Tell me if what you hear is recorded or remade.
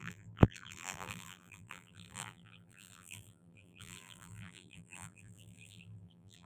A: remade